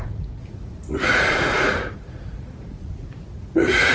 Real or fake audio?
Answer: fake